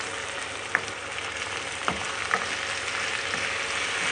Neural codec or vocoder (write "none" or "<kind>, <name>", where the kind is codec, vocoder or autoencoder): none